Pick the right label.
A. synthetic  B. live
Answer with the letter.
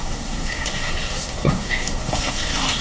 A